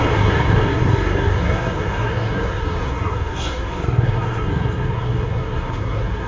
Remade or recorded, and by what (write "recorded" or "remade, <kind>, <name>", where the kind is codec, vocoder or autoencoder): remade, codec, SNAC